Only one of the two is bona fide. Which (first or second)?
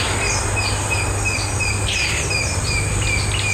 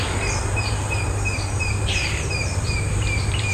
first